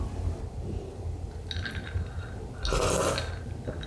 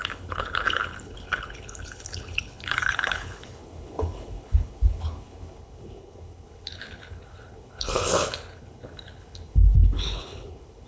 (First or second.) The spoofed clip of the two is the second